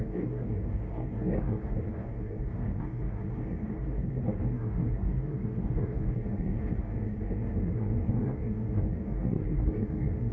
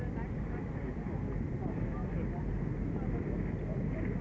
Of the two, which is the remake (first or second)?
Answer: first